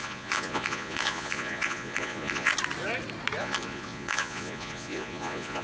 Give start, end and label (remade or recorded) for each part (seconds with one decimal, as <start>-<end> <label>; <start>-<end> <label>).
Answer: 0.0-2.5 remade; 2.5-3.4 recorded; 3.4-5.6 remade